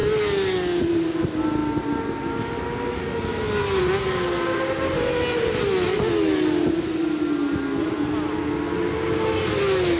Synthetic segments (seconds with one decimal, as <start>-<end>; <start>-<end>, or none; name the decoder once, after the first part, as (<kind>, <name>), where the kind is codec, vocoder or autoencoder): none